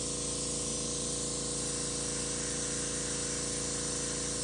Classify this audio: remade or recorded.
recorded